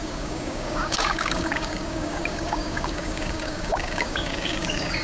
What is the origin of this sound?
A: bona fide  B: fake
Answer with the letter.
B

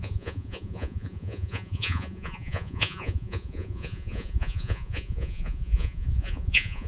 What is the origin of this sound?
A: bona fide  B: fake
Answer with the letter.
B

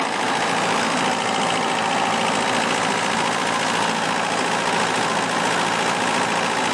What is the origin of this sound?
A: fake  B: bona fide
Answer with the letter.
B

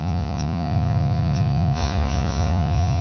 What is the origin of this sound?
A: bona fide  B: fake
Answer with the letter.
B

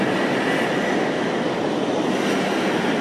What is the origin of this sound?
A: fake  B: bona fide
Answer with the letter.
B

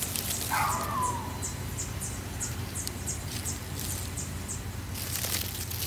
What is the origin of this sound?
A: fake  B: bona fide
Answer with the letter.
B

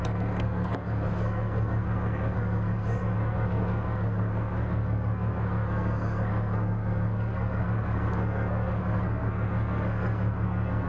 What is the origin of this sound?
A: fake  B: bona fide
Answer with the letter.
A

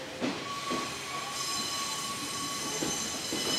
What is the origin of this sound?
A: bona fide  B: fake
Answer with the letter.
A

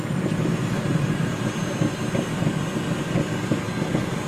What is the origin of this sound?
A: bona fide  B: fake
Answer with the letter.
A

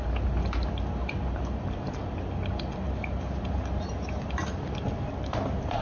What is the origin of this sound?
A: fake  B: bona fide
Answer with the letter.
B